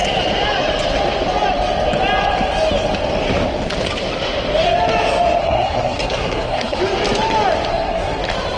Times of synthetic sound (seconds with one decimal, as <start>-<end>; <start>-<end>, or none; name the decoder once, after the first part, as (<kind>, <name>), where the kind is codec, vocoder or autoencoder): 5.4-6.8 (codec, SNAC); 7.7-8.2